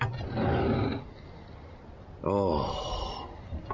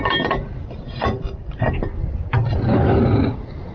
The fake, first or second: second